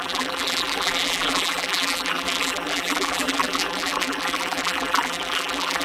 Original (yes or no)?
no